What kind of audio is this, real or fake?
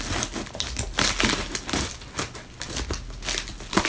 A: real